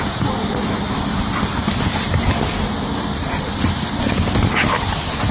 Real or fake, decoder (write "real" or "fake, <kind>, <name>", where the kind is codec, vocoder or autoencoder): real